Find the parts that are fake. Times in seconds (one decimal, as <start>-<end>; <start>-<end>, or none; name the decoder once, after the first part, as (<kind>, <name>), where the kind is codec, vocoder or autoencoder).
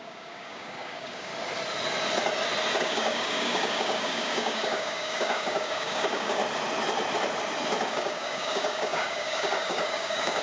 0.0-1.3 (codec, DAC); 2.8-6.4; 7.9-10.4